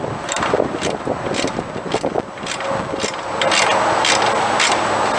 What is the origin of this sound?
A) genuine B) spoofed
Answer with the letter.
A